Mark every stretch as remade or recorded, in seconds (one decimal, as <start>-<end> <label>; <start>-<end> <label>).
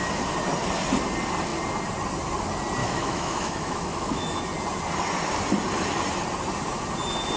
0.0-2.8 recorded; 2.8-4.4 remade; 4.4-7.4 recorded